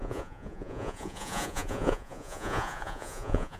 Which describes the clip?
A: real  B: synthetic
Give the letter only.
B